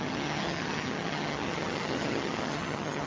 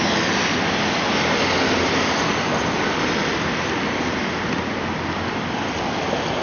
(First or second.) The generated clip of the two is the first